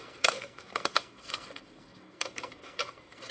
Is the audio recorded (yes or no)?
no